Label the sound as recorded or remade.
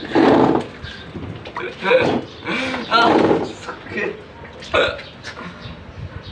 recorded